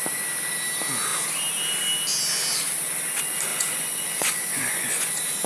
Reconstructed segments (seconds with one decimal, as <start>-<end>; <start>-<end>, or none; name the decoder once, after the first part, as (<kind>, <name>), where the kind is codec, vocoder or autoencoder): 3.5-5.1 (vocoder, Vocos)